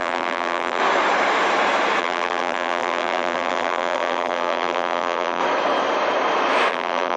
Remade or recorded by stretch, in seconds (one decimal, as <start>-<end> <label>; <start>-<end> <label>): 0.0-0.8 remade; 0.8-2.0 recorded; 2.0-5.4 remade; 5.4-6.7 recorded; 6.7-7.2 remade